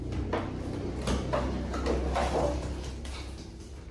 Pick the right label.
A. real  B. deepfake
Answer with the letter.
A